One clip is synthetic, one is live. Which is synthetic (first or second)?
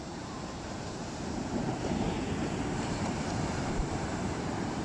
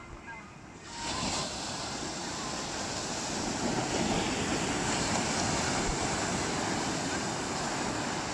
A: first